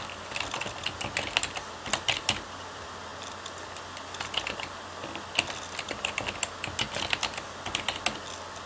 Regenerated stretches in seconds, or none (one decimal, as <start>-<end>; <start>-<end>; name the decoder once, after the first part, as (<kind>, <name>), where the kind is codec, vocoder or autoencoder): none

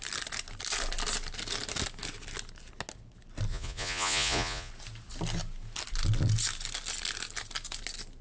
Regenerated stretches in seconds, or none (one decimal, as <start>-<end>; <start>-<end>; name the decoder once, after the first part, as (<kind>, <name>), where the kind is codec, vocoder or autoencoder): 3.5-4.7 (vocoder, Vocos)

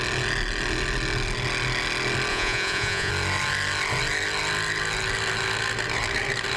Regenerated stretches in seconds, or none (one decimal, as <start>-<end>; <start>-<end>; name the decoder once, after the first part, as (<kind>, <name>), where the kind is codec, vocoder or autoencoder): 2.3-3.1 (vocoder, Vocos)